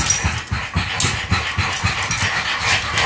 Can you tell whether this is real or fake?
real